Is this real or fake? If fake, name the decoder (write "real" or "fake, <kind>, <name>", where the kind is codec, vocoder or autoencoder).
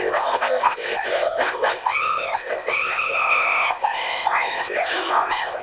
fake, codec, ZipCodec